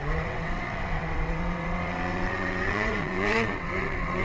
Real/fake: fake